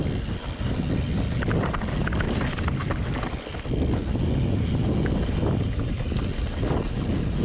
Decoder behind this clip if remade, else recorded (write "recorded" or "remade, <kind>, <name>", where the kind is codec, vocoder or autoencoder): recorded